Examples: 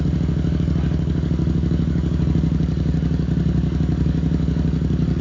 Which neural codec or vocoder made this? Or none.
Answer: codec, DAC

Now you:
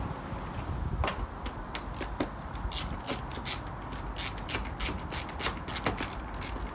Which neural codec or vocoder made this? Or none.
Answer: none